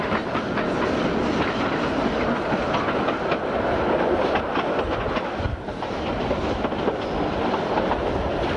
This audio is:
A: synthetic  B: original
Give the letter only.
B